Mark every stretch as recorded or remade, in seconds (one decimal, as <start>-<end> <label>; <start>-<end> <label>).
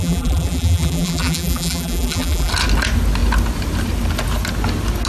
0.0-2.5 remade; 2.5-5.1 recorded